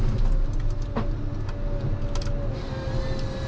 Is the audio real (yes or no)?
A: yes